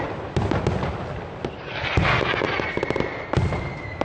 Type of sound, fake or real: real